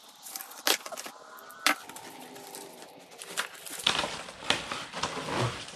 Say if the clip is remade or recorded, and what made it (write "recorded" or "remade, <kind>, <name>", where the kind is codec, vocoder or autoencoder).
remade, vocoder, BigVGAN v2